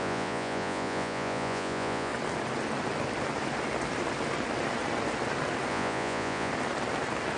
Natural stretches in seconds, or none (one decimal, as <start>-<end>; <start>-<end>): 2.1-5.7; 6.5-7.4